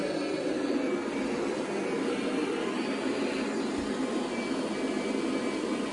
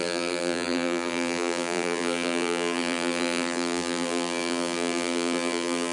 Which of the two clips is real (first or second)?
first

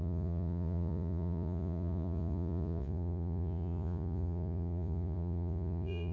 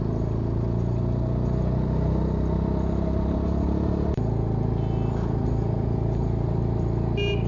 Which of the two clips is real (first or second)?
second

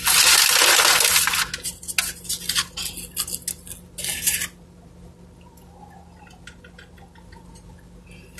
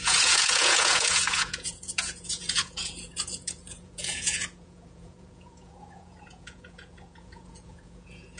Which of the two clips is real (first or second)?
first